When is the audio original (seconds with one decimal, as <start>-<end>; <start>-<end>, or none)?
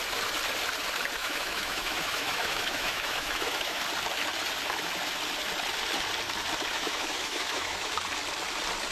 0.0-1.2; 3.8-6.7; 7.9-8.9